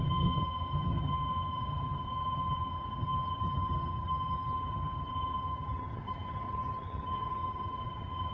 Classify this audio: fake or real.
fake